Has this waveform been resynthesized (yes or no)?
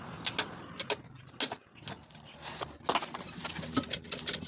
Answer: no